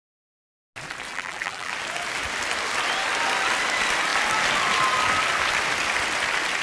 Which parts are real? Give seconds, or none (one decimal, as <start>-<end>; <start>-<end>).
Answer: 0.0-1.1; 1.7-6.6